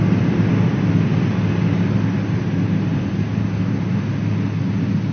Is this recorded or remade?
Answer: recorded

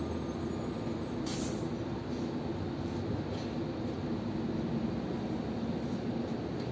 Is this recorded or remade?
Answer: recorded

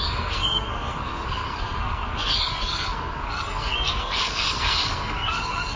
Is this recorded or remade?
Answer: remade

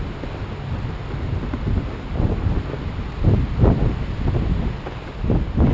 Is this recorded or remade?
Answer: recorded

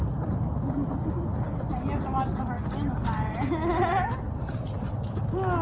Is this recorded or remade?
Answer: recorded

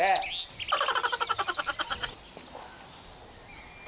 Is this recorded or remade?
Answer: recorded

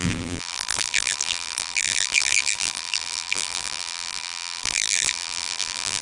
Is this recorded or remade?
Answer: remade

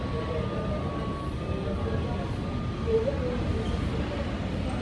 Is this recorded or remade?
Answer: recorded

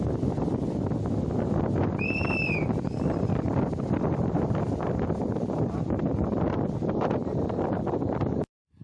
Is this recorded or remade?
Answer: remade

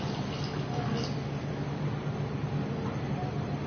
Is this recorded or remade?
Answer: recorded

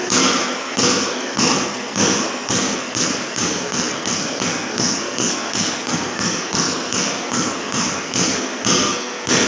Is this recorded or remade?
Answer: remade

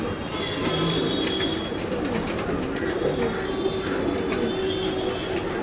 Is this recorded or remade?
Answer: recorded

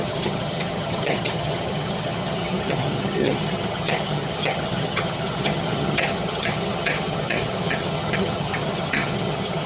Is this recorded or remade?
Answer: remade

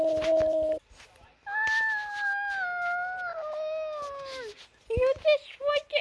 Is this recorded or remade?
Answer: recorded